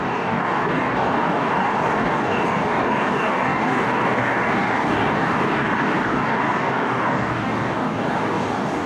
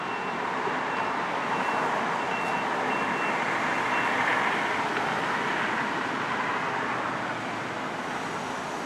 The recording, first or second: second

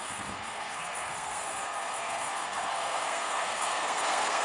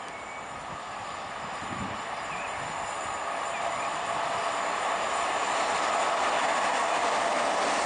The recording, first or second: second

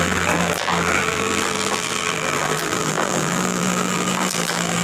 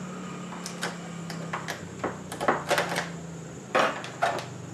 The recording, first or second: second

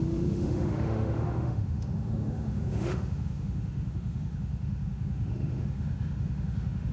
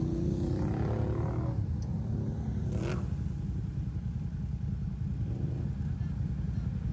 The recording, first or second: second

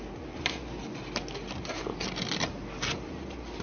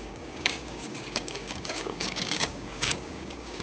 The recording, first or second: first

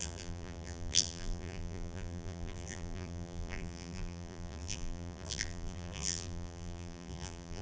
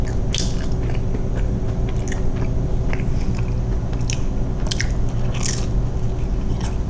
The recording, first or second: second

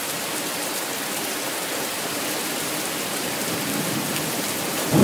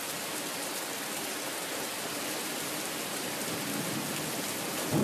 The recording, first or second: second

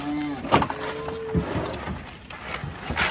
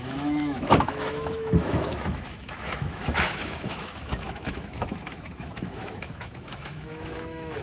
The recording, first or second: first